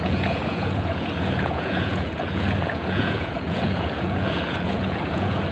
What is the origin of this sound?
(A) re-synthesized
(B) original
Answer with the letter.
A